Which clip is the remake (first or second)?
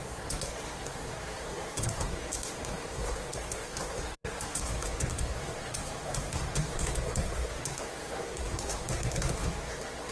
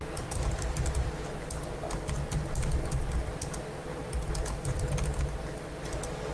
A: first